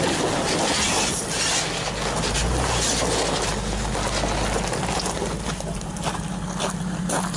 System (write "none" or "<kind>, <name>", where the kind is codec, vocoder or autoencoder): none